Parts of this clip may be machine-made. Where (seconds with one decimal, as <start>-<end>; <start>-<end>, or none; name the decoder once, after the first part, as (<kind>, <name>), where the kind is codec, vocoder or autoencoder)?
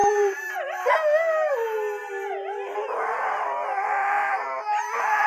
0.0-0.9 (vocoder, BigVGAN v2); 2.0-5.3